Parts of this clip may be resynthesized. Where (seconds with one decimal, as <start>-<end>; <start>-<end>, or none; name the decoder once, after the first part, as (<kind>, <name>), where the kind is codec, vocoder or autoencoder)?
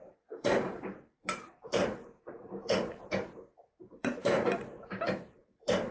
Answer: 0.0-5.9 (vocoder, BigVGAN v2)